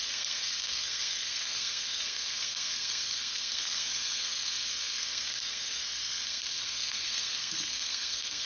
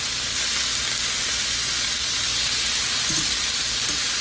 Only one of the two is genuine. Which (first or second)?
second